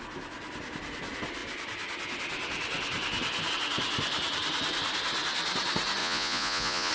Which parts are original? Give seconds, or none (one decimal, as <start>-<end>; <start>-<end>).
0.0-6.0